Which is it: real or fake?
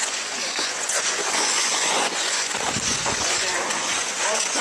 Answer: fake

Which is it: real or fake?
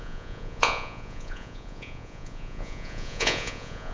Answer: fake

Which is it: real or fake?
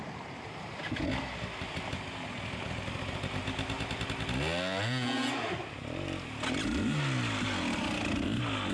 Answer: real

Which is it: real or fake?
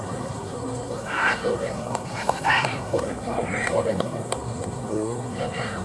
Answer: fake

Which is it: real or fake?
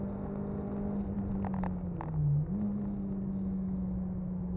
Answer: real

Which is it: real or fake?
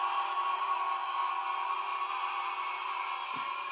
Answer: real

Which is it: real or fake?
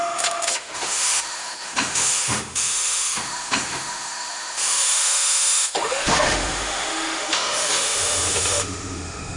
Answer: fake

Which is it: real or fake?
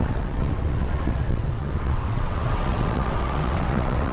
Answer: fake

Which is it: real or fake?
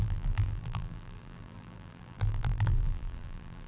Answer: fake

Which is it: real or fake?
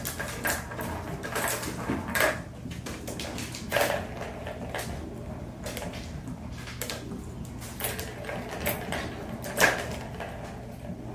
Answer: real